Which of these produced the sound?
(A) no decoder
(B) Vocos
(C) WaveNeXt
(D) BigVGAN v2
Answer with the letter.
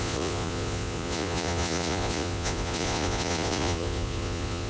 B